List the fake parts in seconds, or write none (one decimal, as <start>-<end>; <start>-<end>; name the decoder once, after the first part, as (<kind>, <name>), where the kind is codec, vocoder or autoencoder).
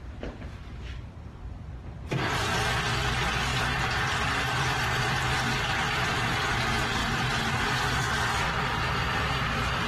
none